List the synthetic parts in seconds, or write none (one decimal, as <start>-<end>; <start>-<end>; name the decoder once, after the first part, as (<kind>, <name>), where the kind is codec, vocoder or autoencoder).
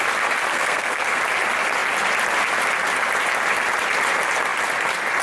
0.5-1.2 (codec, SNAC)